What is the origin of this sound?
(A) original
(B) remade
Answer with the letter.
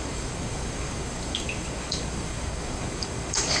B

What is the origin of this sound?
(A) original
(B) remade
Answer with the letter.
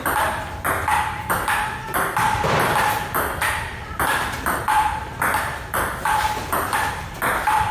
A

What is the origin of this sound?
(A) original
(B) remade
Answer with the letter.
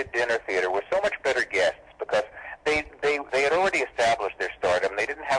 A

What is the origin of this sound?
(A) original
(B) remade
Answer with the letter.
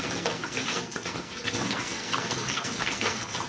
B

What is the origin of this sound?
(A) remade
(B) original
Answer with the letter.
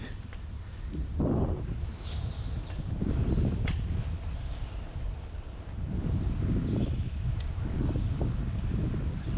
B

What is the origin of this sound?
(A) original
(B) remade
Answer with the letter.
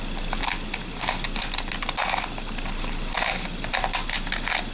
A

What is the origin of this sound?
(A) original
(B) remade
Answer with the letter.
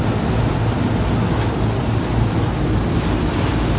A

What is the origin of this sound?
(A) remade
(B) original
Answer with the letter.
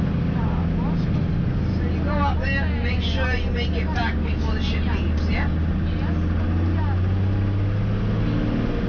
B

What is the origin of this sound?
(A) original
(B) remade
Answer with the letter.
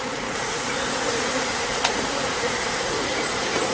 B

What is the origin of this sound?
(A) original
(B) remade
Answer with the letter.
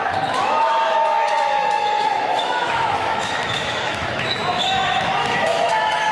B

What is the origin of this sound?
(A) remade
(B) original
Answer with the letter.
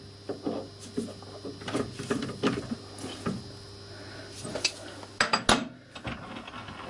B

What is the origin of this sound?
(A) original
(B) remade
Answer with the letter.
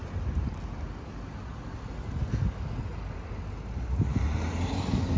A